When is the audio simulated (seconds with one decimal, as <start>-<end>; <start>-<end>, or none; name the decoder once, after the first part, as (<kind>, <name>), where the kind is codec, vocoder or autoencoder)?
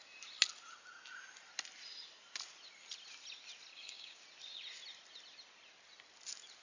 3.7-4.2 (codec, DAC)